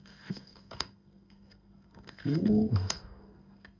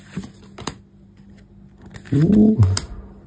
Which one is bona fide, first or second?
second